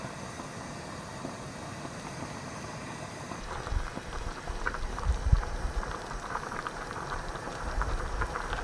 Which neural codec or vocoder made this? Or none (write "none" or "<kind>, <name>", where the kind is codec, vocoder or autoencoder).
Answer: vocoder, BigVGAN v2